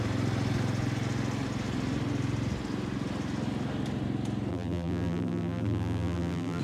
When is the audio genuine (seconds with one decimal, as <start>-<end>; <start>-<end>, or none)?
0.0-4.5